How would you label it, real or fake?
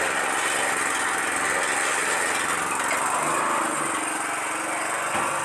real